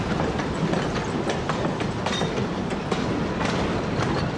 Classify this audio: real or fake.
real